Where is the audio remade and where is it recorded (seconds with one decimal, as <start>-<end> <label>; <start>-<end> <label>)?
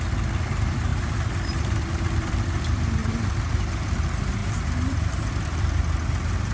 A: 0.0-0.9 recorded; 0.9-2.6 remade; 2.6-3.0 recorded; 3.0-3.6 remade; 3.6-4.4 recorded; 4.4-5.6 remade; 5.6-6.5 recorded